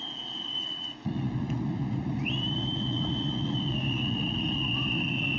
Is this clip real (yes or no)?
no